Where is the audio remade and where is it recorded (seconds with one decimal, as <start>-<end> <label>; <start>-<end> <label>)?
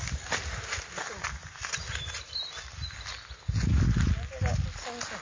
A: 0.0-5.2 recorded